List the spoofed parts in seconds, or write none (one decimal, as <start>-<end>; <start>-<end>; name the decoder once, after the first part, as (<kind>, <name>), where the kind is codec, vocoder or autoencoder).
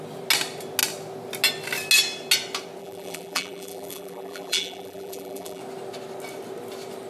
2.8-5.6 (vocoder, BigVGAN v2)